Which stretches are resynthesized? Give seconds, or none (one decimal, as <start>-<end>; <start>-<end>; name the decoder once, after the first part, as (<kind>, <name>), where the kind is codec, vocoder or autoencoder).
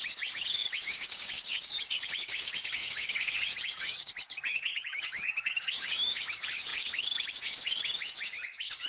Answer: 0.0-8.9 (codec, DAC)